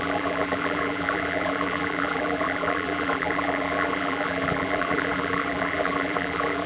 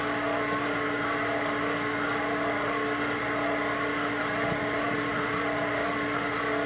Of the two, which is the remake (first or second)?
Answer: first